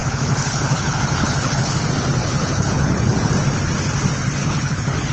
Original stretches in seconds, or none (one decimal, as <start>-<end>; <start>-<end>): 1.8-2.2; 3.3-4.4